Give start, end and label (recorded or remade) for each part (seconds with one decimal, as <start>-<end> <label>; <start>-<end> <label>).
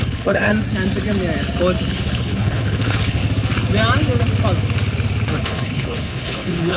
0.0-0.5 remade; 0.5-1.9 recorded; 1.9-3.2 remade; 3.2-5.4 recorded; 5.4-6.8 remade